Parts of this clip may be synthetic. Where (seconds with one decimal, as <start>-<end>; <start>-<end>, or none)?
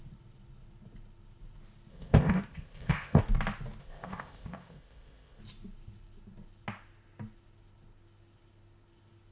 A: 1.9-3.2; 3.8-5.4